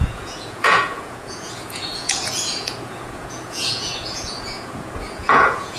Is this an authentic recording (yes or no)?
no